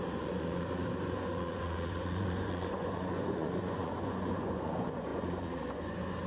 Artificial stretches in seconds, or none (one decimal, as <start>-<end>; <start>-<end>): 0.0-6.3